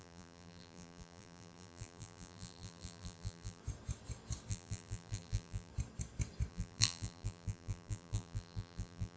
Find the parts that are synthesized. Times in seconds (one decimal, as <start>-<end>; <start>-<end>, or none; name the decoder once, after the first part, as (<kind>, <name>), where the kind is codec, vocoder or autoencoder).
0.0-3.6 (vocoder, BigVGAN v2); 4.5-5.7; 6.5-9.2